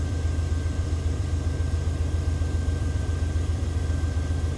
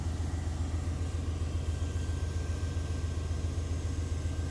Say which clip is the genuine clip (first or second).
second